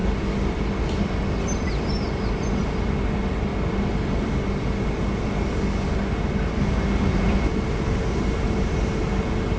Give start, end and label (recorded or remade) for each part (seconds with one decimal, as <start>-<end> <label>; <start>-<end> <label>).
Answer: 0.0-7.1 recorded; 7.1-9.1 remade; 9.1-9.6 recorded